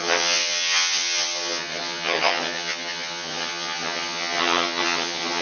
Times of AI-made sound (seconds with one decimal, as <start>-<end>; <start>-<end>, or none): 0.0-5.4